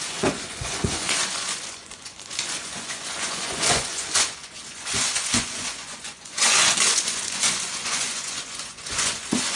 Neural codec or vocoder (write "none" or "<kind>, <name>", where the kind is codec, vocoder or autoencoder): vocoder, Vocos